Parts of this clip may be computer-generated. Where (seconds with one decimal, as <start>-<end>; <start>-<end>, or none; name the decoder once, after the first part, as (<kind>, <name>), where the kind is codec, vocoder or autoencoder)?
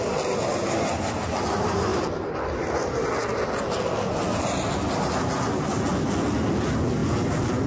7.0-7.7 (vocoder, BigVGAN v2)